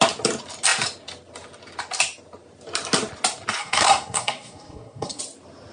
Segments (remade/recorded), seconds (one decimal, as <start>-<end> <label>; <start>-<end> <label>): 0.0-3.6 recorded; 3.6-5.2 remade; 5.2-5.7 recorded